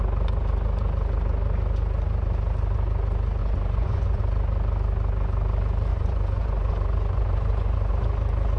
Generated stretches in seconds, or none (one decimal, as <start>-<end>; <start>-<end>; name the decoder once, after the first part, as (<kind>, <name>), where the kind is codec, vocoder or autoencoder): 3.4-4.2 (vocoder, Vocos); 5.9-7.9